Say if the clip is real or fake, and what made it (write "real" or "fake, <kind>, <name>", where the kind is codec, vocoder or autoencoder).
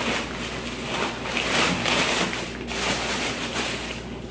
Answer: real